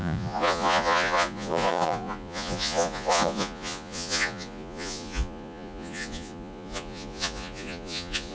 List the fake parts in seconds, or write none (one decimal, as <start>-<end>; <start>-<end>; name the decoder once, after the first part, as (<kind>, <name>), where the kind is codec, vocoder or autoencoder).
0.0-8.3 (vocoder, Vocos)